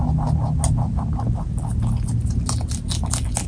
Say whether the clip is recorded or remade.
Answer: recorded